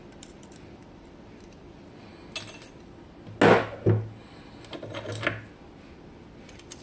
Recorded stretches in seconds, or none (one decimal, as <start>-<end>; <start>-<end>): 2.1-6.2